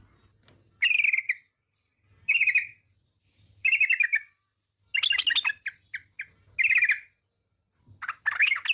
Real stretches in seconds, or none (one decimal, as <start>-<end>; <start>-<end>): 0.0-8.7